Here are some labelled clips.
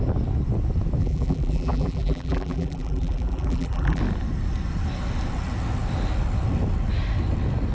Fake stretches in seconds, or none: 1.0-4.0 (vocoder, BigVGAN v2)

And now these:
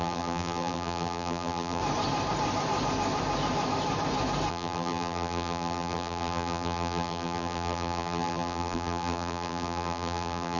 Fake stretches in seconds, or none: 0.0-1.8 (vocoder, BigVGAN v2); 4.5-10.6